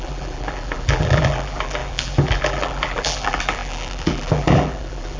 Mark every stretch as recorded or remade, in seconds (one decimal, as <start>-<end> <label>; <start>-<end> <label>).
0.0-5.2 remade